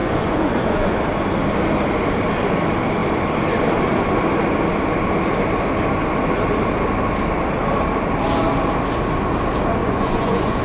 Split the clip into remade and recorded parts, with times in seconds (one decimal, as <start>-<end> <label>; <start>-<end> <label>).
0.0-1.0 remade; 1.0-9.8 recorded; 9.8-10.6 remade